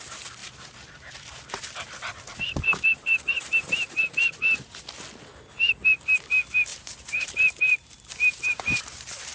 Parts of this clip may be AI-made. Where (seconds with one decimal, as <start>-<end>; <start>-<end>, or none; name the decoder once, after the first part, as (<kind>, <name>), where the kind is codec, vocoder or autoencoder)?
0.4-1.5 (vocoder, BigVGAN v2); 2.7-4.8; 6.7-9.3